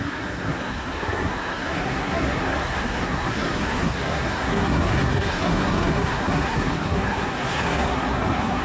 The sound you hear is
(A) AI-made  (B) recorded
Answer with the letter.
A